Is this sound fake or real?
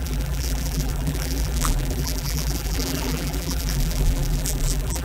fake